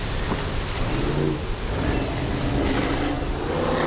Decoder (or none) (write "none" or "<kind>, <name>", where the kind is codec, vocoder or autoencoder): none